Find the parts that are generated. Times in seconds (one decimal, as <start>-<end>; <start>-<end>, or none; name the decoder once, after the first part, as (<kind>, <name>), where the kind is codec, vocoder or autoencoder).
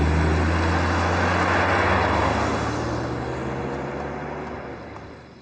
none